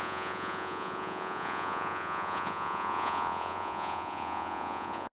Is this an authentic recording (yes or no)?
no